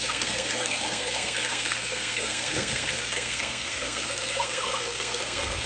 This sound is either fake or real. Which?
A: fake